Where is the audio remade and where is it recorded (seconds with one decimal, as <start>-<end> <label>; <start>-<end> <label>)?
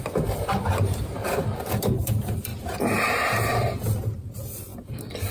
0.0-5.3 recorded